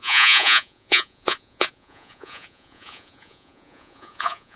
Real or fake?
fake